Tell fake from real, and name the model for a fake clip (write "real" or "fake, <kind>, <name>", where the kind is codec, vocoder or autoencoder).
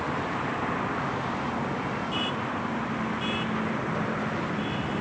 fake, vocoder, BigVGAN v2